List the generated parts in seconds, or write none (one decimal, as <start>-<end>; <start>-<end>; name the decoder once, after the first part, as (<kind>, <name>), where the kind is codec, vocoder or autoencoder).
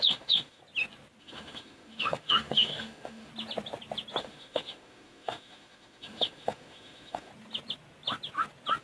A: 0.0-0.6 (autoencoder, DAC-VAE); 1.2-3.3; 4.2-7.3